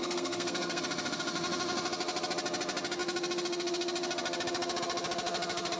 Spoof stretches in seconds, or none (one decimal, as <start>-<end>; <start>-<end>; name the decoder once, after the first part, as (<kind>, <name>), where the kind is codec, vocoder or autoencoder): 0.0-0.8 (codec, SNAC)